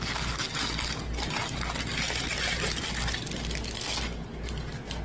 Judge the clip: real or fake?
real